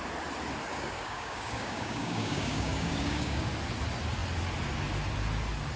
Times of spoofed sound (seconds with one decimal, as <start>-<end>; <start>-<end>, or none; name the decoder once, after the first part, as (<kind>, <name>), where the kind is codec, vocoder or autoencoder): 0.7-3.5 (codec, DAC)